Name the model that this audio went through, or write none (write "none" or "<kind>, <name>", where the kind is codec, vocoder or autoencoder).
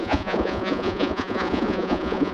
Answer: vocoder, Vocos